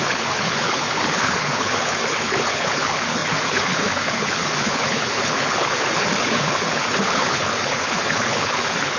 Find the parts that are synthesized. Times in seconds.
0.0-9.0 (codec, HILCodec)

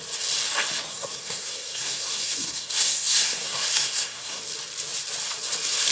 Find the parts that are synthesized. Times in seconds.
0.9-4.4 (codec, SNAC)

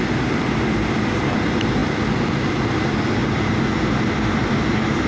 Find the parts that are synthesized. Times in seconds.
none